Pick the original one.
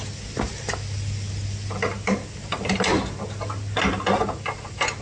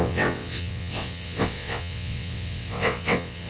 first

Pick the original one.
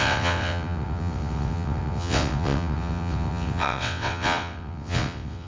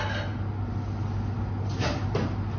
second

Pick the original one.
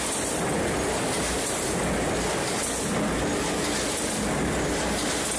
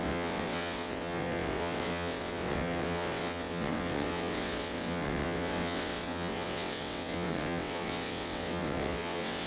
first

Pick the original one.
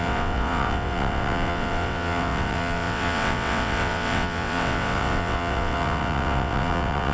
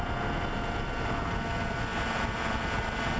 second